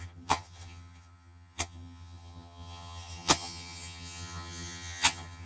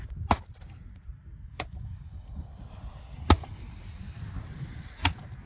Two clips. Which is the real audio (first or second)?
second